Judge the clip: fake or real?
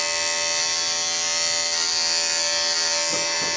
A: real